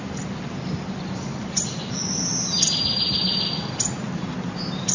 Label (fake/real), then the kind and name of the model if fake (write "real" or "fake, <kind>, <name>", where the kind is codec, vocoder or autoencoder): real